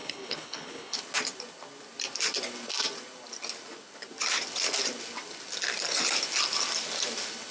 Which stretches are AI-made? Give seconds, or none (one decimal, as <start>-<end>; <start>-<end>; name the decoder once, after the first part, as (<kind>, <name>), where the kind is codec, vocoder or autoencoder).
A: 0.0-1.0 (codec, HILCodec)